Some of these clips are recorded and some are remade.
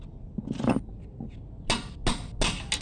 recorded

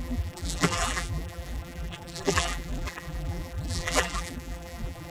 remade